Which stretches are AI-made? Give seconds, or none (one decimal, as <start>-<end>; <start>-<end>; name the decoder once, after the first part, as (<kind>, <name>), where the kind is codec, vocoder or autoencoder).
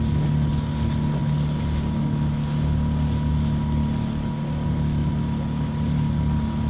none